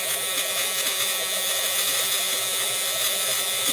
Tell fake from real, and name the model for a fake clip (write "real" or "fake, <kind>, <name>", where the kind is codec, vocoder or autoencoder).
fake, vocoder, Vocos